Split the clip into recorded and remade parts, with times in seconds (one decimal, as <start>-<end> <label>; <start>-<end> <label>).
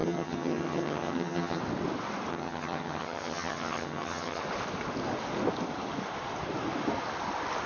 0.0-1.6 remade; 1.6-2.3 recorded; 2.3-4.4 remade; 4.4-7.7 recorded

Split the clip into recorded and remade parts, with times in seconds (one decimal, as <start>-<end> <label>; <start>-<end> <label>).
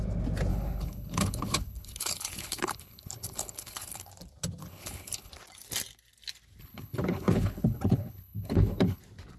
0.0-0.5 recorded; 0.5-4.1 remade; 4.1-4.6 recorded; 4.6-5.3 remade; 5.3-6.6 recorded; 6.6-9.0 remade; 9.0-9.4 recorded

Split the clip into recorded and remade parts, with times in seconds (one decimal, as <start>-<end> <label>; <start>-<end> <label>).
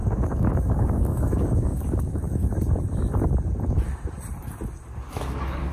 0.0-2.4 remade; 2.4-5.1 recorded; 5.1-5.7 remade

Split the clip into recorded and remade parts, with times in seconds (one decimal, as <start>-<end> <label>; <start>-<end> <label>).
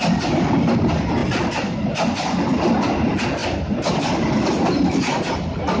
0.0-5.8 recorded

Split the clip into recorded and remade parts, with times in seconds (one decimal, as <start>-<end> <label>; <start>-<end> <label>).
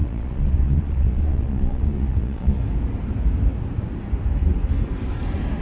0.0-2.6 remade; 2.6-5.6 recorded